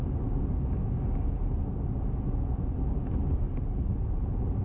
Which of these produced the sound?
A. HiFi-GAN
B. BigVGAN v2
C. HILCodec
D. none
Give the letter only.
D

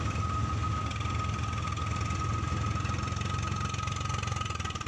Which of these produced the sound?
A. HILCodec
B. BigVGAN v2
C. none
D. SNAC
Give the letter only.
C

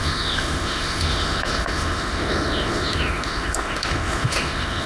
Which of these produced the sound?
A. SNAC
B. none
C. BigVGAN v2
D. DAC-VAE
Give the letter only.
D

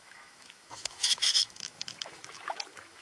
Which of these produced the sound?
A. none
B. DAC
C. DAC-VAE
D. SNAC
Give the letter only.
C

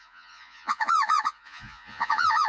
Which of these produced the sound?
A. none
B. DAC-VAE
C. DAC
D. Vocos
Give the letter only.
D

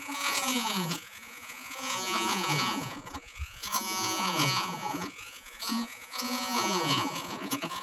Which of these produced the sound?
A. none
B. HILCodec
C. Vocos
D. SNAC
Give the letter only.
C